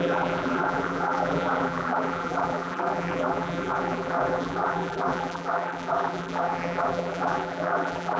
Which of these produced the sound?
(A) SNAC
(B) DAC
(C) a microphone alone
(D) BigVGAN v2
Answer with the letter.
D